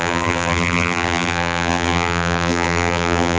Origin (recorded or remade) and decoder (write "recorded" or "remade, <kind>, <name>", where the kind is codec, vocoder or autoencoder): remade, vocoder, BigVGAN v2